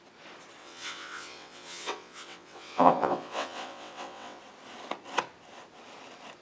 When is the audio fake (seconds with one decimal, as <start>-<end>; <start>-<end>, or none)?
0.6-4.4